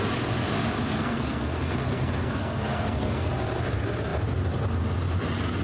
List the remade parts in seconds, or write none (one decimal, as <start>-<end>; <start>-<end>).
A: 1.0-3.3